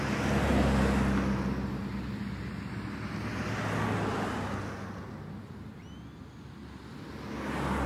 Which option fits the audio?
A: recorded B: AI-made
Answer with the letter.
A